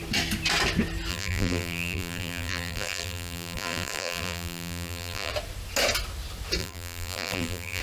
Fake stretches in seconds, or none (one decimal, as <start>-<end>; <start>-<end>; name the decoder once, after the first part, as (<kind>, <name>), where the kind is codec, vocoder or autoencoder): 1.1-5.3 (vocoder, BigVGAN v2); 6.6-7.8